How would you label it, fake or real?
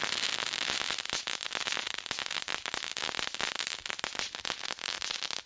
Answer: real